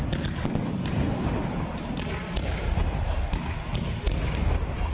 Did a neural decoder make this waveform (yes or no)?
no